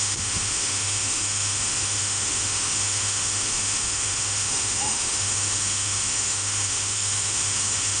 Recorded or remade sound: remade